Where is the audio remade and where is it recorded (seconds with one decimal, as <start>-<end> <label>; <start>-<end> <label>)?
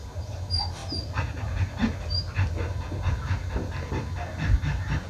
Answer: 0.0-5.1 recorded